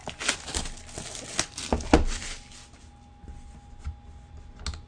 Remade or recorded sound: recorded